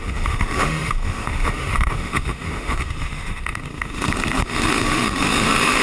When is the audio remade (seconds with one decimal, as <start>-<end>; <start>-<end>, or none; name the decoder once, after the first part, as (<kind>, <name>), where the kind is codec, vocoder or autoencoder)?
0.0-5.8 (autoencoder, DAC-VAE)